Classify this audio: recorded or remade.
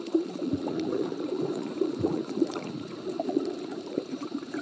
remade